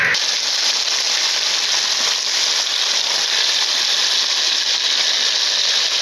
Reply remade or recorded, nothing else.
recorded